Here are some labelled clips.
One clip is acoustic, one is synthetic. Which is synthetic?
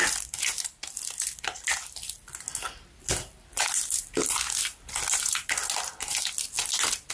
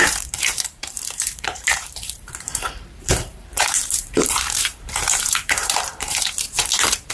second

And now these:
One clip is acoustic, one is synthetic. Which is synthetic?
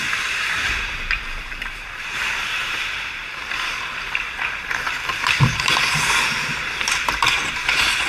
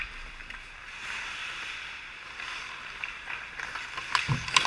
first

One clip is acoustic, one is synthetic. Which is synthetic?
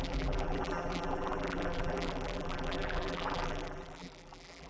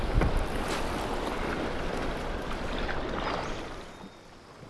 first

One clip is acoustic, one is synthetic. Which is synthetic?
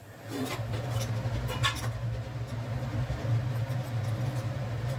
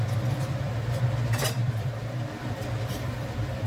second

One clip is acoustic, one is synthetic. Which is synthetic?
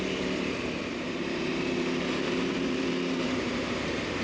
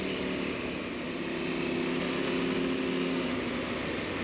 first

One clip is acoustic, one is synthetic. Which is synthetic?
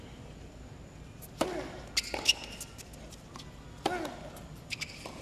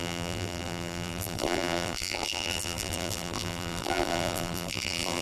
second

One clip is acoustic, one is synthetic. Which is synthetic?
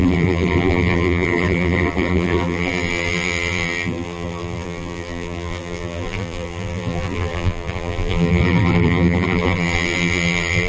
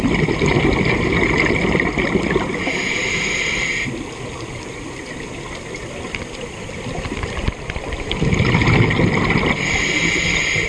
first